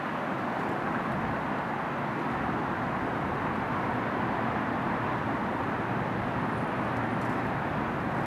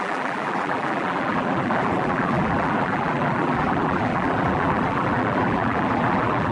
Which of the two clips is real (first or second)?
first